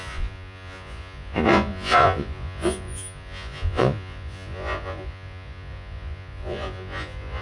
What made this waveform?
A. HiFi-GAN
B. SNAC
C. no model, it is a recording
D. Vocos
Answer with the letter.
D